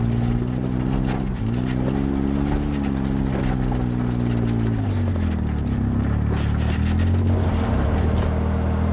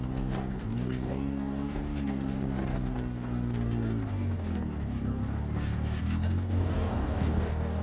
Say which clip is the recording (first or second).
first